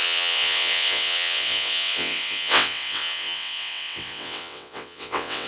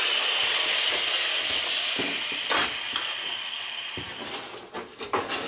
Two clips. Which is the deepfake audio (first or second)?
first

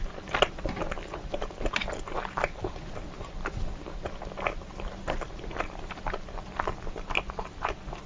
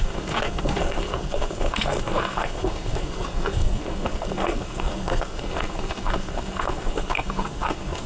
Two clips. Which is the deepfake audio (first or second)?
second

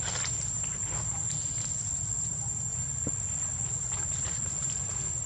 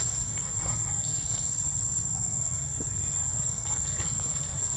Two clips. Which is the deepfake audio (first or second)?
second